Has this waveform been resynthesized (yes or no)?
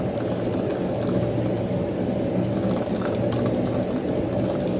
no